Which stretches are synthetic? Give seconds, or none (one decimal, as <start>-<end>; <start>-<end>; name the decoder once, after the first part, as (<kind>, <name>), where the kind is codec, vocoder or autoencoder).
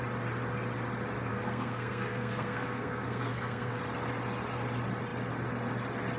1.3-3.8 (codec, SNAC)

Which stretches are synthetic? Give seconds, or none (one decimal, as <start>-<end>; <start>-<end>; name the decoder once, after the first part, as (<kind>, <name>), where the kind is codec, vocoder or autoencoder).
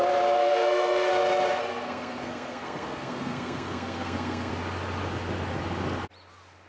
0.4-1.1 (codec, SNAC); 1.6-4.5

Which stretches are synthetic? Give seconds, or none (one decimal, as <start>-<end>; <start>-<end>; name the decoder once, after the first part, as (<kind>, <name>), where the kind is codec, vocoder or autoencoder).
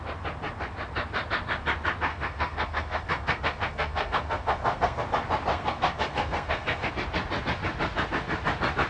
2.1-5.0 (codec, SNAC); 5.5-6.9